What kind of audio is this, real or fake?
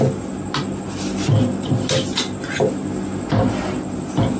real